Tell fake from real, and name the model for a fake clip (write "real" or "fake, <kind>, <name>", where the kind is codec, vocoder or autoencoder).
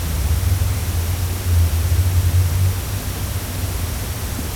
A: real